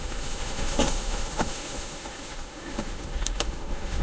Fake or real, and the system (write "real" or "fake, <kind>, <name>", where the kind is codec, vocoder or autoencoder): fake, autoencoder, DAC-VAE